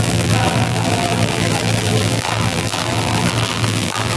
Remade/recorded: remade